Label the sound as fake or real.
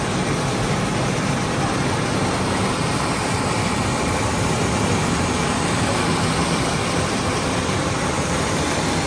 fake